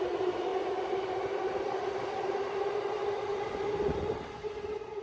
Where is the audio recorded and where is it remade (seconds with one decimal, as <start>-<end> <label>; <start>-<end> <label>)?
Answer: 0.0-5.0 recorded